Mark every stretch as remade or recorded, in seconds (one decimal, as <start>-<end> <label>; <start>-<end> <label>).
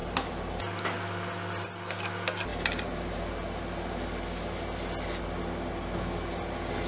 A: 0.0-0.6 remade; 0.6-2.5 recorded; 2.5-3.3 remade; 3.3-6.9 recorded